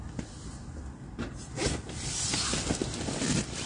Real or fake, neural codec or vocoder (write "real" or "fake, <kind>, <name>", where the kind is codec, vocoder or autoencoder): real